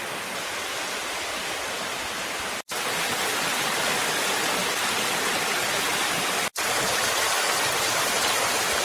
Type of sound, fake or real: real